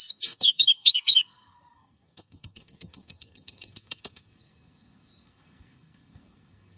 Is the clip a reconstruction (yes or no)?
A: yes